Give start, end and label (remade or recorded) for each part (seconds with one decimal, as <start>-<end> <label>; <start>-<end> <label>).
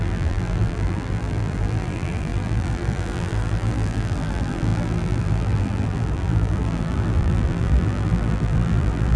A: 0.0-9.2 remade